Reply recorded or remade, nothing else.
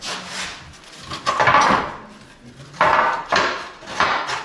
recorded